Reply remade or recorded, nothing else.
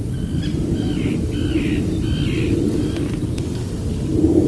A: remade